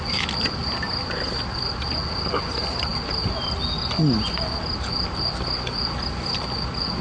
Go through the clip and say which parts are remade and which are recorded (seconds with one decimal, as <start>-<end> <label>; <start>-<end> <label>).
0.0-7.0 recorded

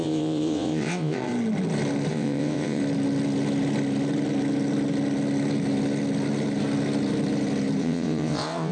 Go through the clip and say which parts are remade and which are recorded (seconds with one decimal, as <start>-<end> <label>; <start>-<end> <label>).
0.0-1.3 remade; 1.3-2.1 recorded; 2.1-2.8 remade; 2.8-7.8 recorded; 7.8-8.7 remade

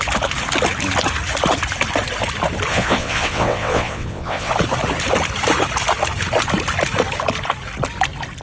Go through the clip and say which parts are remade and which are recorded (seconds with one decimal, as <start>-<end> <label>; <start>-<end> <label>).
0.0-2.7 recorded; 2.7-4.5 remade; 4.5-8.4 recorded

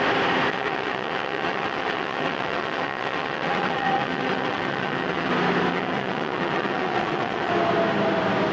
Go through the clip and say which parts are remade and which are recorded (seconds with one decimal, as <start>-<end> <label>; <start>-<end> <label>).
0.0-0.5 recorded; 0.5-5.3 remade; 5.3-5.7 recorded; 5.7-7.5 remade; 7.5-8.5 recorded